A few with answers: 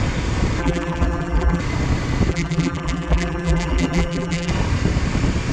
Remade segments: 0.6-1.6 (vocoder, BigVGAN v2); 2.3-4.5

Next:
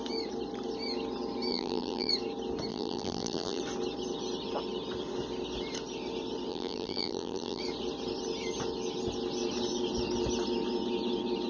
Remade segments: 1.5-2.1 (vocoder, BigVGAN v2); 2.7-3.6; 6.5-7.6